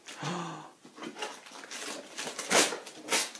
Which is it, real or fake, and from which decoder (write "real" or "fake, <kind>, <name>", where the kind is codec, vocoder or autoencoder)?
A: real